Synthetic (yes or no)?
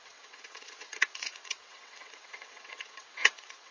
yes